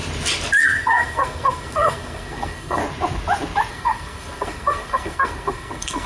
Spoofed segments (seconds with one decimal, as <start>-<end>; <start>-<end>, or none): 0.6-2.8; 3.7-6.1